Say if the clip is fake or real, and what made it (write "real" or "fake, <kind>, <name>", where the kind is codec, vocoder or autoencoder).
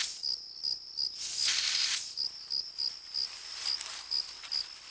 real